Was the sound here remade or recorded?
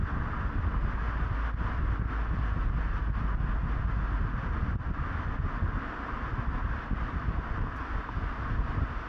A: recorded